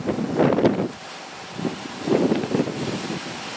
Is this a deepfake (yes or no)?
no